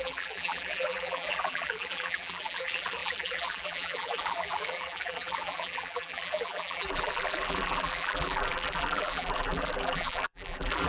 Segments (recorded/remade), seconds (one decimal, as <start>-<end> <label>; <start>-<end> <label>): 0.0-10.9 remade